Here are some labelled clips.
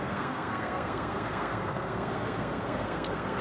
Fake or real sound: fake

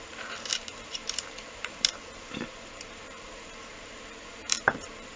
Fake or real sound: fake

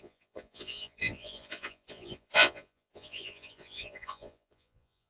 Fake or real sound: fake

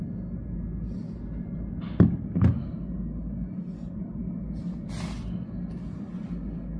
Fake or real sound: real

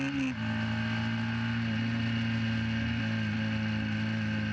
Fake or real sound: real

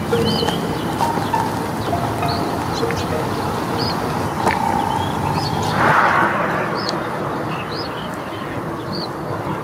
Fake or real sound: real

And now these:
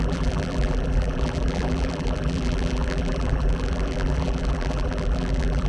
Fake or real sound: fake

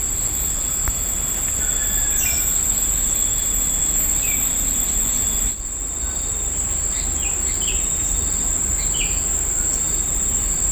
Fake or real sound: fake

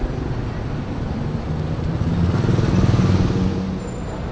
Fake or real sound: real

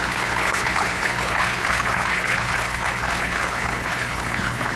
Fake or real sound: fake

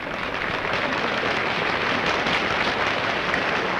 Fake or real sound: real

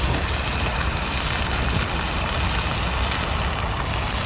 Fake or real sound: real